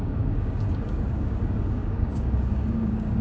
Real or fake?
fake